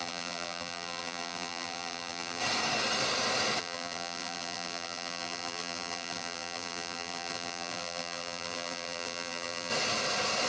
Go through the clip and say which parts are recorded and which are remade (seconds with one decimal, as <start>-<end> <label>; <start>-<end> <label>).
0.0-2.4 remade; 2.4-3.6 recorded; 3.6-9.7 remade; 9.7-10.5 recorded

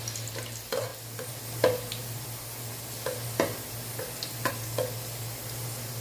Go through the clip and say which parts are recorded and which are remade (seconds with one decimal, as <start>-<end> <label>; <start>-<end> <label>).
0.0-6.0 recorded

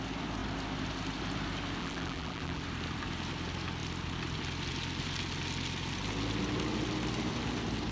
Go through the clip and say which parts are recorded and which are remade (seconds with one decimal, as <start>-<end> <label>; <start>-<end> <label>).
0.0-1.8 recorded; 1.8-2.6 remade; 2.6-7.9 recorded

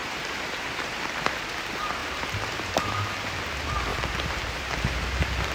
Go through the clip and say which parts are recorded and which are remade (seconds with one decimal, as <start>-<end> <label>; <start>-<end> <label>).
0.0-1.4 remade; 1.4-2.0 recorded; 2.0-3.3 remade; 3.3-3.9 recorded; 3.9-5.0 remade; 5.0-5.5 recorded

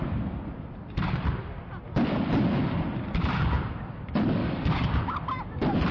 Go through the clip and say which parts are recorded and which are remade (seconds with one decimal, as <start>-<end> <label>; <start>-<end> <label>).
0.0-4.4 remade; 4.4-5.0 recorded; 5.0-5.9 remade

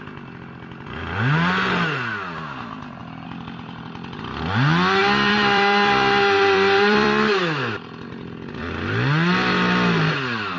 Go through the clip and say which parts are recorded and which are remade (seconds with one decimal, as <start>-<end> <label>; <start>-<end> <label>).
0.0-3.0 recorded; 3.0-4.4 remade; 4.4-5.0 recorded; 5.0-8.6 remade; 8.6-10.6 recorded

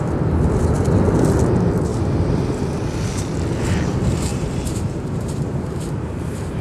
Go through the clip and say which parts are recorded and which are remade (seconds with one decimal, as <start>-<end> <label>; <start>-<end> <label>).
0.0-4.3 recorded; 4.3-6.6 remade